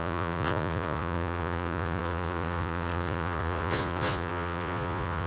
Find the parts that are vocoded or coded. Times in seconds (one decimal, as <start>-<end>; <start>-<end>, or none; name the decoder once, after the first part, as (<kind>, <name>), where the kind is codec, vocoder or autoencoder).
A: 0.0-5.3 (vocoder, Vocos)